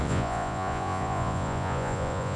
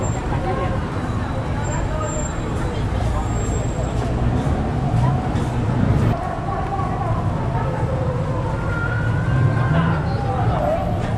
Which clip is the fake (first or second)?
first